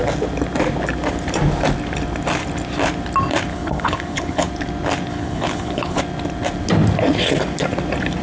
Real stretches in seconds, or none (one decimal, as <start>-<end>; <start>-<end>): 0.0-3.5; 4.5-5.1; 6.0-8.2